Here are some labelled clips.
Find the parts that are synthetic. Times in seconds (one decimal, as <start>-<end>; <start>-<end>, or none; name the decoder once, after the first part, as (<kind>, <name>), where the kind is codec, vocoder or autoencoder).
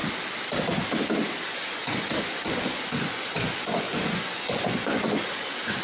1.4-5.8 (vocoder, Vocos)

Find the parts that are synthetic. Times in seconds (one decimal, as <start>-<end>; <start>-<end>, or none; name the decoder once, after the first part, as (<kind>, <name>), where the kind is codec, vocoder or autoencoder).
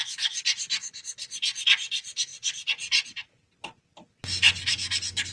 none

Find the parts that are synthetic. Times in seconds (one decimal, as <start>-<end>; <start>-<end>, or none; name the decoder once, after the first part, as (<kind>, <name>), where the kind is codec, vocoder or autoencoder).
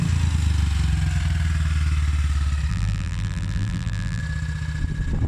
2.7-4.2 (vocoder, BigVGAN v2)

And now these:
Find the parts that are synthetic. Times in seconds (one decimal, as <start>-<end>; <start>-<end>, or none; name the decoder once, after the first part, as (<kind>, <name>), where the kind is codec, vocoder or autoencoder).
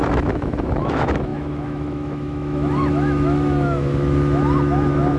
0.0-5.2 (autoencoder, DAC-VAE)